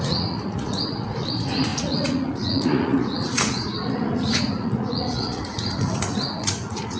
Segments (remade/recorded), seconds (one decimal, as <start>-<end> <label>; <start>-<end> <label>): 0.0-7.0 remade